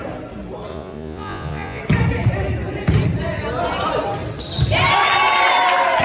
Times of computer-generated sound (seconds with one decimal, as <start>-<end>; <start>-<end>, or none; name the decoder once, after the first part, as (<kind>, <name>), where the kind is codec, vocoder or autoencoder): 0.7-1.8 (vocoder, Vocos)

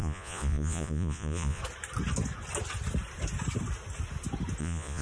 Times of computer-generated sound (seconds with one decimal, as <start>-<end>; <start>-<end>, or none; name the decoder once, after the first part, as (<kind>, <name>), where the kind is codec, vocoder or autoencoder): 0.0-1.6 (vocoder, Vocos); 4.6-5.0

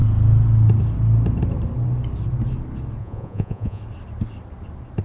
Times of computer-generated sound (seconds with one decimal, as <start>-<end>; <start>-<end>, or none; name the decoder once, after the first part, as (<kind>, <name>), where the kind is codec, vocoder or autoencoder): 3.0-3.8 (vocoder, Vocos)

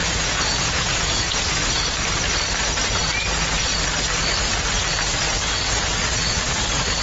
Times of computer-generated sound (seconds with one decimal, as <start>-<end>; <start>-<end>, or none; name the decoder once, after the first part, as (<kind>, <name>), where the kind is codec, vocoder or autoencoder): 0.0-1.8 (vocoder, Vocos)

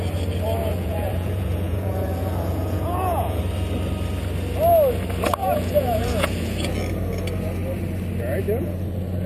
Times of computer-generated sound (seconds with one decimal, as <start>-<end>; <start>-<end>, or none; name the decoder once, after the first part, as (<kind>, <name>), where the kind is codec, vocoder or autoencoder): 0.6-3.4 (vocoder, Vocos); 5.4-6.7

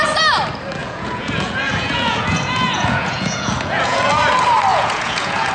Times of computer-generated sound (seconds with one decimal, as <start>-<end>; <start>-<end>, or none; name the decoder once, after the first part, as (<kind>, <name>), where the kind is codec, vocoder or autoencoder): 0.8-4.1 (vocoder, Vocos); 4.7-5.5

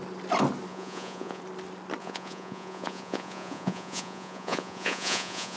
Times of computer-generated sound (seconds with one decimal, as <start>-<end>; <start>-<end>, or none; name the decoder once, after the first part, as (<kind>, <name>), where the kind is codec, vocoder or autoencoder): 0.7-1.4 (vocoder, Vocos); 2.0-5.6

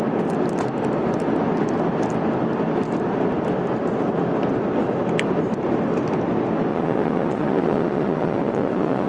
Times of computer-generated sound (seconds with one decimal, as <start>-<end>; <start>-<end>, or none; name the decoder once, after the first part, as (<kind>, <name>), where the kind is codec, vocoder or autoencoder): 6.7-9.1 (vocoder, Vocos)